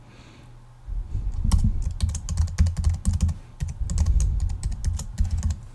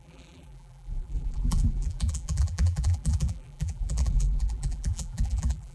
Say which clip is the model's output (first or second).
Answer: second